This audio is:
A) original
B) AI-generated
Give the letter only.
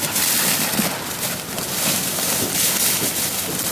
A